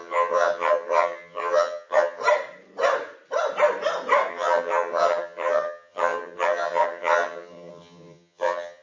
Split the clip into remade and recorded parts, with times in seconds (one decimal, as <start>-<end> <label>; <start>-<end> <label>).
0.0-2.2 remade; 2.2-4.3 recorded; 4.3-8.8 remade